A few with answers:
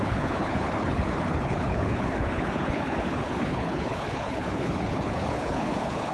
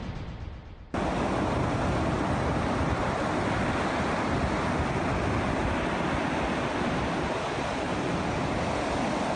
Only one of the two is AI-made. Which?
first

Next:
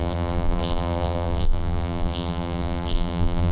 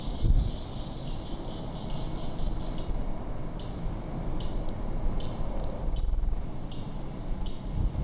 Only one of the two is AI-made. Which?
first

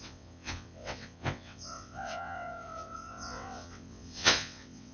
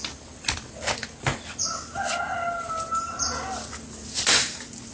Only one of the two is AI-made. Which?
first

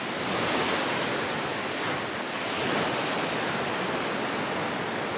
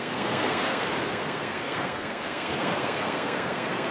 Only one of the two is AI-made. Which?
second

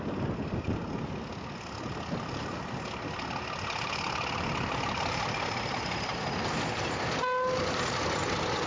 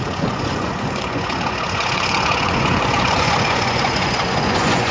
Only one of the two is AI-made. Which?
second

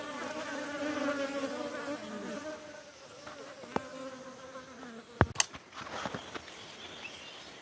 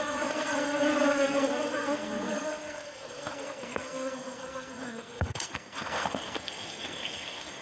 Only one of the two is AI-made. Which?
second